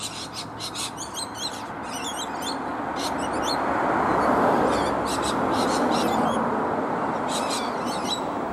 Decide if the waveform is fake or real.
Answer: real